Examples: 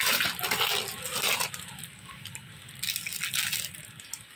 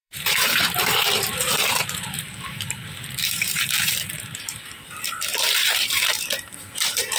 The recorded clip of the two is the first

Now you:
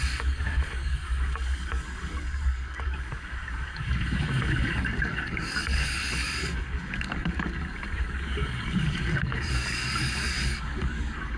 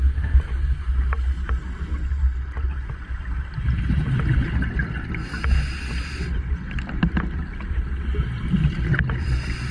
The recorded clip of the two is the second